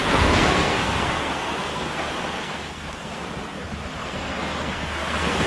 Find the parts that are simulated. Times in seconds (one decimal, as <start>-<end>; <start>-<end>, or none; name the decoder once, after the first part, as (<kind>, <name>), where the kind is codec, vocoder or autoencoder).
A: 0.0-3.3 (codec, SNAC); 4.0-5.5